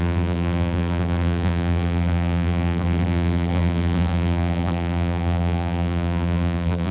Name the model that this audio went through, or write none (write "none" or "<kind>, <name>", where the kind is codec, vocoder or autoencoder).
vocoder, BigVGAN v2